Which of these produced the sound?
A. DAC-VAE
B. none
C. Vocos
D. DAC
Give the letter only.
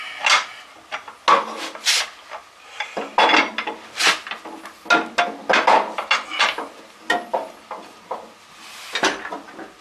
B